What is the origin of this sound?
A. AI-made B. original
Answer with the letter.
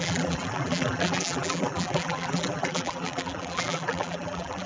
A